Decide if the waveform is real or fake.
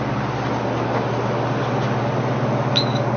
real